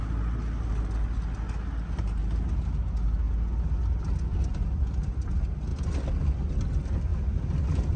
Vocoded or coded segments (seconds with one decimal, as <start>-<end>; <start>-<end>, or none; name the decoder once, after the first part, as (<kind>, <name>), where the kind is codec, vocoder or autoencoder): none